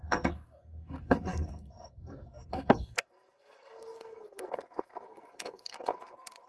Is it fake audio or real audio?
fake